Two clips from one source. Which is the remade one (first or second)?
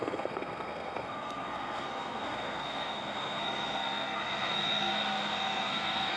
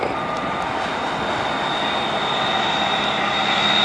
first